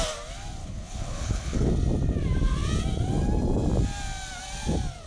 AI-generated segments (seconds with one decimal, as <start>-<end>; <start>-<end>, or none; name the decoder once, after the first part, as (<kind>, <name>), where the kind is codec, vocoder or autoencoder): 0.6-1.7 (codec, HILCodec)